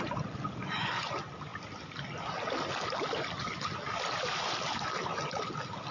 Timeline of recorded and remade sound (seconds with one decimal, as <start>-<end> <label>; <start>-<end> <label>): 0.0-0.6 recorded; 0.6-1.1 remade; 1.1-5.9 recorded

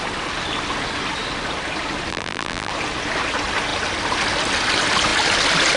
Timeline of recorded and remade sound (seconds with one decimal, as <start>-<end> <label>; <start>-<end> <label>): 0.0-2.1 recorded; 2.1-2.7 remade; 2.7-5.8 recorded

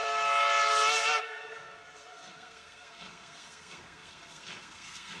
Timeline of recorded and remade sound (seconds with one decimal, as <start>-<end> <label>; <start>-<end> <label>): 0.0-1.2 recorded; 1.2-5.2 remade

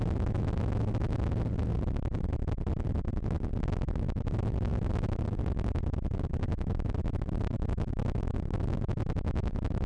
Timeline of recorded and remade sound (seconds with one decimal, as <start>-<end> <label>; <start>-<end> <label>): 0.0-9.9 recorded

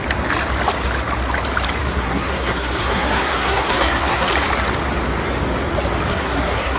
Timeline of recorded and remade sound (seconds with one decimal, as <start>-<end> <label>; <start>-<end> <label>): 0.0-1.8 recorded; 1.8-4.3 remade; 4.3-6.1 recorded; 6.1-6.8 remade

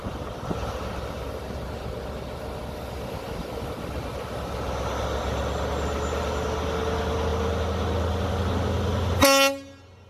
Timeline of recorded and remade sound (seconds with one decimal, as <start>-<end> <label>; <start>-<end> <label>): 0.0-10.1 recorded

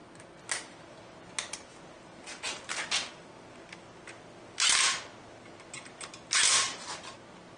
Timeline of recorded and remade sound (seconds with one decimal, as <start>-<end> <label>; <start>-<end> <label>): 0.0-7.6 recorded